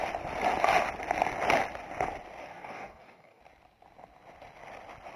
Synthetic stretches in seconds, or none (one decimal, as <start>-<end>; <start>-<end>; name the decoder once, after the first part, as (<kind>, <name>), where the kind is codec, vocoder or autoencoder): 2.4-3.4 (codec, DAC)